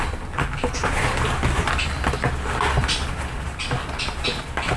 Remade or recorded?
recorded